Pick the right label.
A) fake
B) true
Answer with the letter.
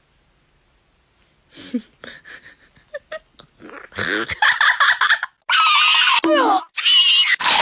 B